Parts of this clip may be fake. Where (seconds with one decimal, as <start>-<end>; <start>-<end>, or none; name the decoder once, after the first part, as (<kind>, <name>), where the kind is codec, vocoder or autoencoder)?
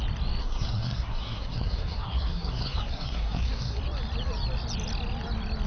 0.4-3.8 (codec, SNAC)